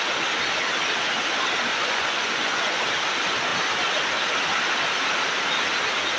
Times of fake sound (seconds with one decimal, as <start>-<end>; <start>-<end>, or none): 1.7-2.8